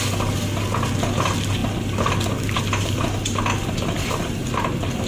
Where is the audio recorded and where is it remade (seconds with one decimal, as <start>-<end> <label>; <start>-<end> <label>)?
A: 0.0-1.6 remade; 1.6-2.3 recorded; 2.3-4.4 remade; 4.4-5.1 recorded